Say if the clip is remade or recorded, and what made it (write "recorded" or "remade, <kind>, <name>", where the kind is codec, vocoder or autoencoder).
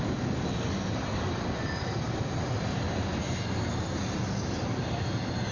recorded